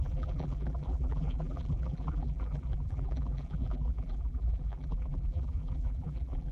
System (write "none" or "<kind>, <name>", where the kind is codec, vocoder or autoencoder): vocoder, BigVGAN v2